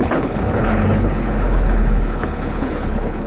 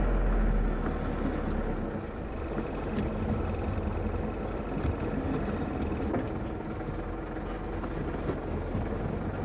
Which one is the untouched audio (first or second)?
second